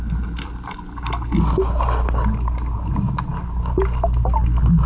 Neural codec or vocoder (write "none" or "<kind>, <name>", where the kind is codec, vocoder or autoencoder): none